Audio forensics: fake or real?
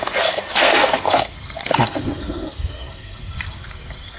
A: fake